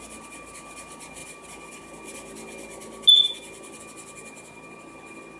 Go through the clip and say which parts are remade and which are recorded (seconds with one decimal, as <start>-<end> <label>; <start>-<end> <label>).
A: 0.0-5.4 recorded

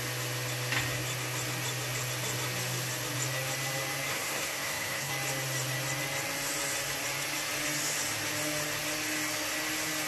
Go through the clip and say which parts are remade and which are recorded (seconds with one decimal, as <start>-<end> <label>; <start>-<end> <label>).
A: 0.0-4.1 recorded; 4.1-5.1 remade; 5.1-10.1 recorded